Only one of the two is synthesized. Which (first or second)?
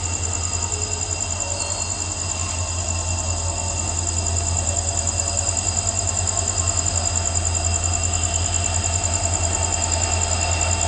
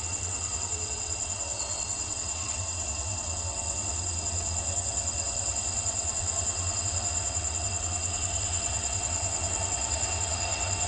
second